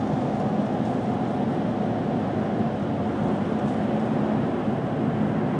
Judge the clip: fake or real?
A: real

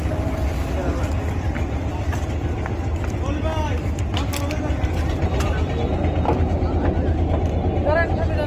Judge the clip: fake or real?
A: real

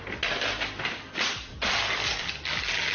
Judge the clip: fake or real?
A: real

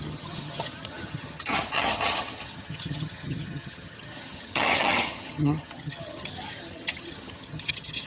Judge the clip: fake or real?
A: fake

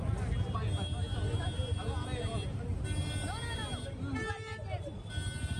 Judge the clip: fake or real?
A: real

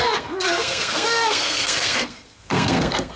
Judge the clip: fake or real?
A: fake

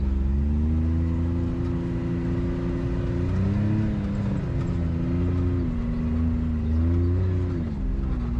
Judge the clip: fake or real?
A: real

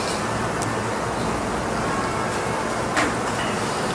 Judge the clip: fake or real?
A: real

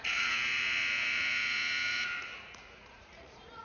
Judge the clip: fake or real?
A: fake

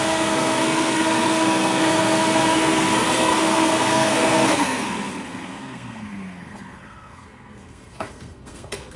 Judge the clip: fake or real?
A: fake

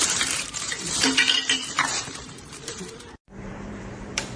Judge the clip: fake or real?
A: fake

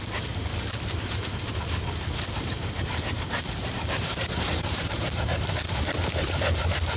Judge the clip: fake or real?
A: fake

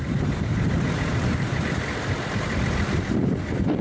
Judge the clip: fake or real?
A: real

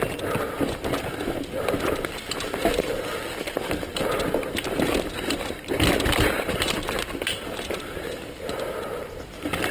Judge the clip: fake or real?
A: real